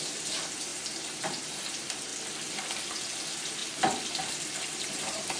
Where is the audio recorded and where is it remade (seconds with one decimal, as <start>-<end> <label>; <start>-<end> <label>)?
0.0-2.1 remade; 2.1-3.2 recorded; 3.2-3.6 remade; 3.6-4.8 recorded; 4.8-5.4 remade